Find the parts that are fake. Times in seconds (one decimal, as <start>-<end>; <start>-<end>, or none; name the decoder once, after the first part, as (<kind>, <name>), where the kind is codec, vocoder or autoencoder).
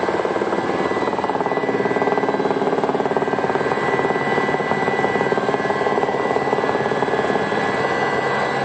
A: none